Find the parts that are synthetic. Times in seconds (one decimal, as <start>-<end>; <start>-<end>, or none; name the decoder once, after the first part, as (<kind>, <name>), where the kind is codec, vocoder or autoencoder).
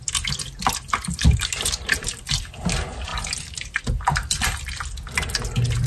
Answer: none